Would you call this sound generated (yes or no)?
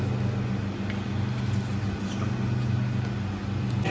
no